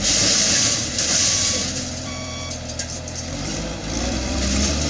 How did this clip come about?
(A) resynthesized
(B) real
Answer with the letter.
A